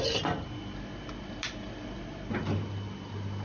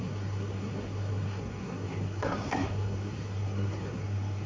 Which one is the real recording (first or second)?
first